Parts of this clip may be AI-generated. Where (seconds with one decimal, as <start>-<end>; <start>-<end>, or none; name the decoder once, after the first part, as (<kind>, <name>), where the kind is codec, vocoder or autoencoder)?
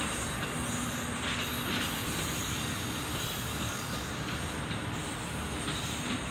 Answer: 3.5-4.1 (codec, DAC)